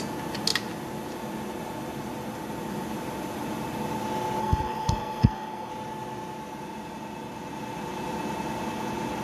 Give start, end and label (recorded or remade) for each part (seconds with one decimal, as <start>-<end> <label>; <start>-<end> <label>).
0.0-4.4 recorded; 4.4-5.7 remade; 5.7-9.2 recorded